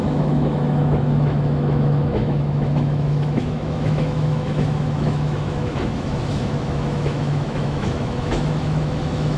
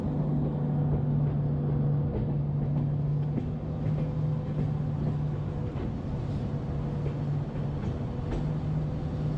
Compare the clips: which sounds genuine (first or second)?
second